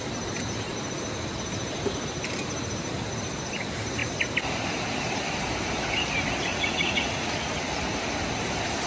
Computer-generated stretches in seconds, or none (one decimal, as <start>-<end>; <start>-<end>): 6.5-7.5